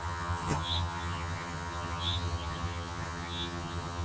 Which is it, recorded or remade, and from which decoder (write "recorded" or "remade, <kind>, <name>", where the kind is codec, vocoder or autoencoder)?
remade, vocoder, HiFi-GAN